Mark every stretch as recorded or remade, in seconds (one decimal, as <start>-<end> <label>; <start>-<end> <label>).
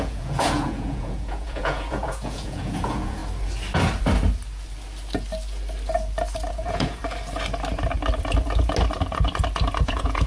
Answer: 0.0-3.2 remade; 3.2-6.5 recorded; 6.5-7.0 remade; 7.0-9.8 recorded; 9.8-10.3 remade